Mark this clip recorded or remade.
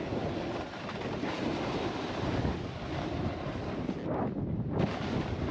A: recorded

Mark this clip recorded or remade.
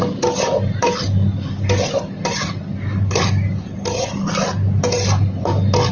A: recorded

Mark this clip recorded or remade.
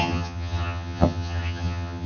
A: remade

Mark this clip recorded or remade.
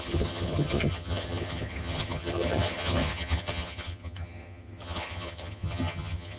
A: remade